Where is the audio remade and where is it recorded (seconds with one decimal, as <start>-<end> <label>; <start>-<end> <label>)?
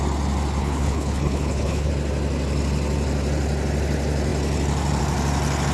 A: 0.0-0.6 recorded; 0.6-1.9 remade; 1.9-5.7 recorded